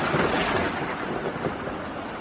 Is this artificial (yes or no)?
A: no